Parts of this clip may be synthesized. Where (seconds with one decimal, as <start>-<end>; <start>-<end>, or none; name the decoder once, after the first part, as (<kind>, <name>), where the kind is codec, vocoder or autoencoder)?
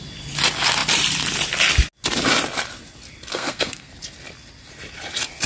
3.3-3.9 (codec, SNAC)